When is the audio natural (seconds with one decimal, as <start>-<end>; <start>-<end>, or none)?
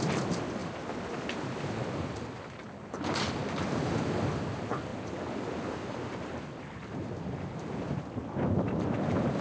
0.0-9.4